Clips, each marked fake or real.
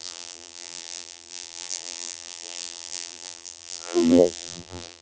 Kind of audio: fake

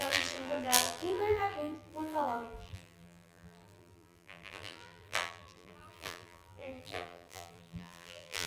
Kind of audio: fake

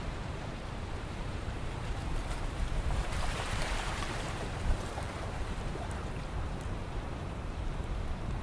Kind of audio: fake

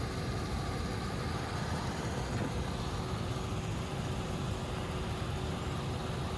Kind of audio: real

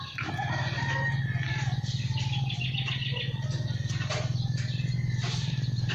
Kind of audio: real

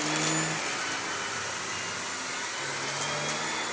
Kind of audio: real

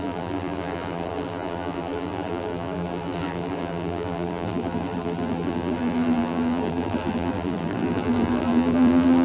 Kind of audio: fake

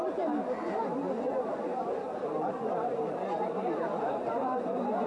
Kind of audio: fake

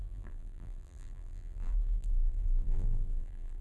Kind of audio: fake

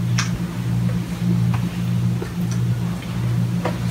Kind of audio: real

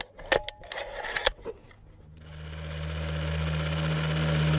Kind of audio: real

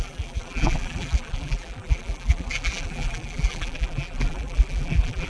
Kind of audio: fake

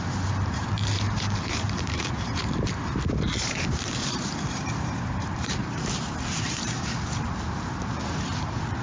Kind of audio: fake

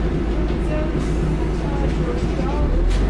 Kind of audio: real